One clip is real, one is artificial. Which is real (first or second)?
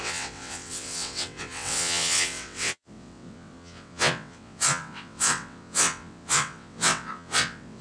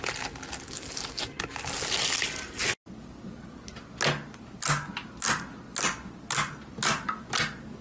second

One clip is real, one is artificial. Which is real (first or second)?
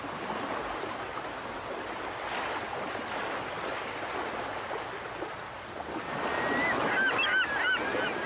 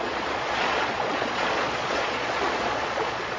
first